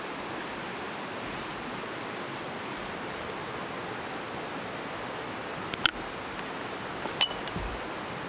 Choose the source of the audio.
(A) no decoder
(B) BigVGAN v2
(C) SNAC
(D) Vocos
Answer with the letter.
A